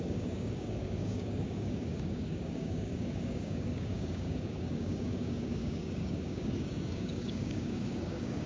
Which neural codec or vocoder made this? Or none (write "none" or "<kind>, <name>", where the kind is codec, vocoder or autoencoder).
codec, DAC